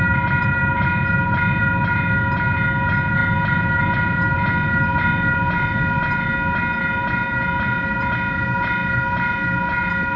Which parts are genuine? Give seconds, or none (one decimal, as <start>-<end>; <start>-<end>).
0.0-10.2